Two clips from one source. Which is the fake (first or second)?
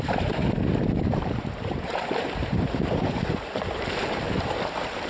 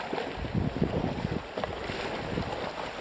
first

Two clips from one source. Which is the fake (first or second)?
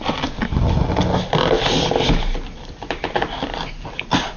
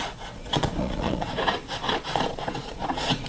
second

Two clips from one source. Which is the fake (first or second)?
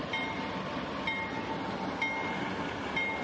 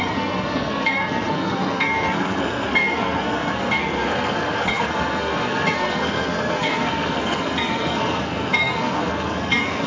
second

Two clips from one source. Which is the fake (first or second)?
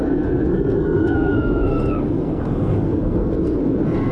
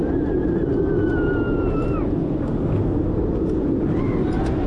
first